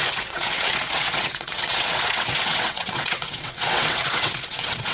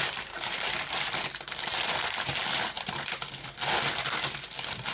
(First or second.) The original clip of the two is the second